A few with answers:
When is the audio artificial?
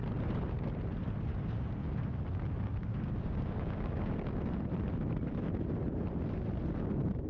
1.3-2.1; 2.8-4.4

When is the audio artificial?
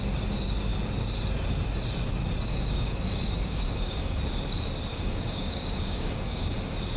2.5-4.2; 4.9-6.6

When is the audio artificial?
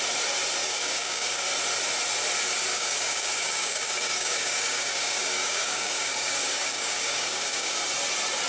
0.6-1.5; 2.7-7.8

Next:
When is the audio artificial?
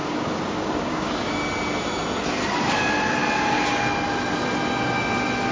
0.0-1.3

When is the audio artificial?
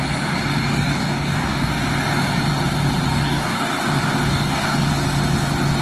0.7-1.7; 3.1-3.7; 4.3-4.9